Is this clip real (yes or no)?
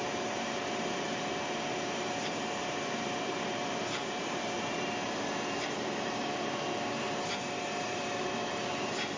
no